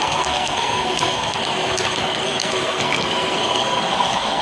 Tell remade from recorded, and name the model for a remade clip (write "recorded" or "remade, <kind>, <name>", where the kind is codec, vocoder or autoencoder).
remade, codec, SNAC